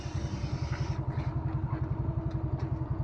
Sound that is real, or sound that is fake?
real